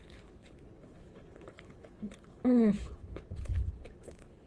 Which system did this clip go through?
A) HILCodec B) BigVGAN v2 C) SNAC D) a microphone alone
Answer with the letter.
A